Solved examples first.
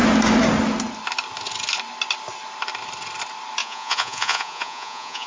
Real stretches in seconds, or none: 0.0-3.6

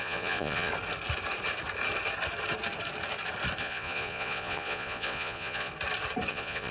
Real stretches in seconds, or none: 0.7-3.6; 5.7-6.3

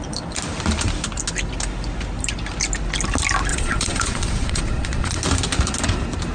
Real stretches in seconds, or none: 0.0-3.5; 5.2-6.3